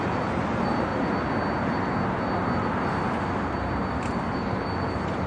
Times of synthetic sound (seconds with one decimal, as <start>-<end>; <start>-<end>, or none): 0.0-0.9; 3.9-5.3